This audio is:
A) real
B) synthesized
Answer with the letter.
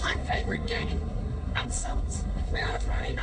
B